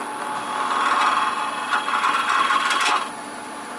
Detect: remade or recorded recorded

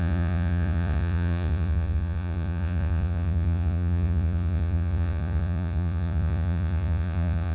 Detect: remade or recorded remade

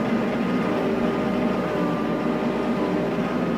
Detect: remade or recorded recorded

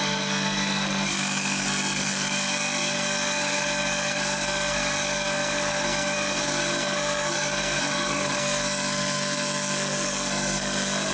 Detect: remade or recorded remade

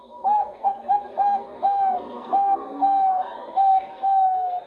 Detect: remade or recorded remade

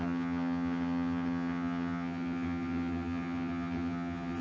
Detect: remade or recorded remade